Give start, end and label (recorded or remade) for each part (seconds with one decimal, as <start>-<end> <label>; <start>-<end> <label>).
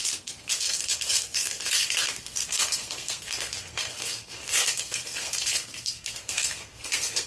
0.0-7.3 remade